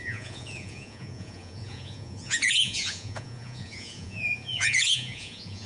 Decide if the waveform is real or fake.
fake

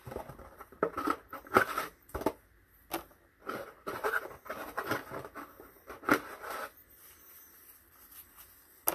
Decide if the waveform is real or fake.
real